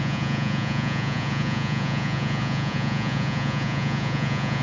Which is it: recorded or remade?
remade